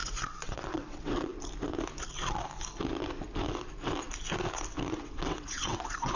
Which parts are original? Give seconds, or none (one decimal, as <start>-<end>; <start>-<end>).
1.3-5.0